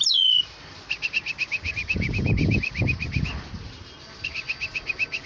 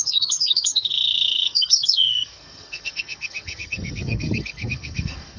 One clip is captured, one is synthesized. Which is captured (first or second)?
first